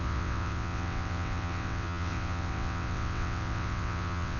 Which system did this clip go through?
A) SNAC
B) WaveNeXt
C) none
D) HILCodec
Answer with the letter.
B